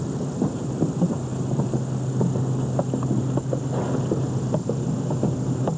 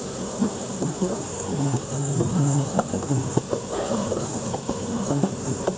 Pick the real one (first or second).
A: first